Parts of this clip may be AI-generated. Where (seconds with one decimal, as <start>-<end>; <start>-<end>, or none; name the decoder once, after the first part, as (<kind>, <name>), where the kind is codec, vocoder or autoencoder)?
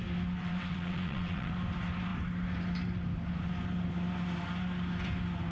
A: 0.4-1.5 (vocoder, WaveNeXt)